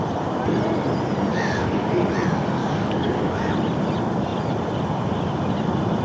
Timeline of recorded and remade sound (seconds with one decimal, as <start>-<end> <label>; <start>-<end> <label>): 0.0-1.3 recorded; 1.3-1.9 remade; 1.9-2.6 recorded; 2.6-3.5 remade; 3.5-6.0 recorded